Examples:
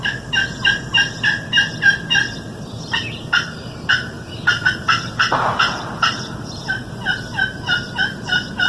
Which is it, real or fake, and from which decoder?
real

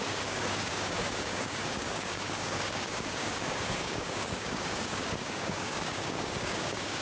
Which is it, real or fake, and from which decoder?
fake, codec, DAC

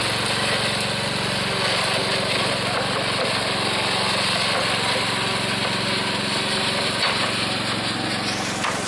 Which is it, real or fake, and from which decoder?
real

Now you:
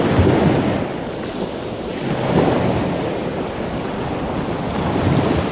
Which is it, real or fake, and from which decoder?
real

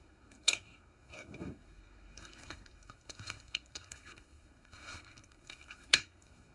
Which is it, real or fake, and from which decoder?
fake, codec, SNAC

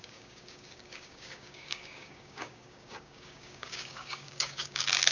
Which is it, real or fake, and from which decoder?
fake, codec, DAC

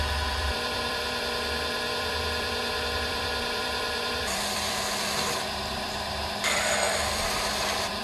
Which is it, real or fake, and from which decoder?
fake, vocoder, BigVGAN v2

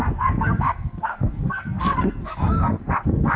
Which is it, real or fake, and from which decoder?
fake, codec, SNAC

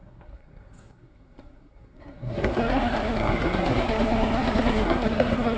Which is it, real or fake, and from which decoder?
fake, codec, SNAC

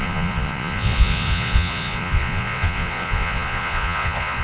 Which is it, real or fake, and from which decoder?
fake, vocoder, Vocos